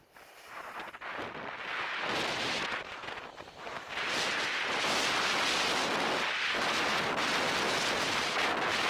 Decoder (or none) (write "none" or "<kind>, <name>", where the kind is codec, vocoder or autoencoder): none